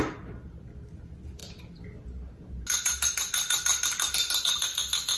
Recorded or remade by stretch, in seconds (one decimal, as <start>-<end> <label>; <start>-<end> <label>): 0.0-5.2 recorded